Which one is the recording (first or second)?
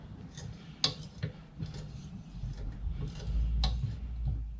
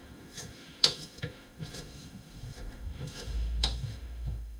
first